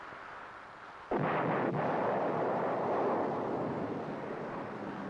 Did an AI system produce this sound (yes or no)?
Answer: no